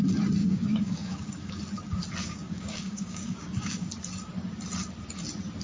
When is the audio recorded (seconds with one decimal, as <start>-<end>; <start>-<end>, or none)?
0.0-0.4; 1.6-2.2; 3.9-5.6